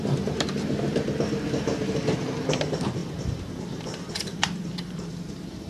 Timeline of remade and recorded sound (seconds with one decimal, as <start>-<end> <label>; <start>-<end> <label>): 0.0-5.7 remade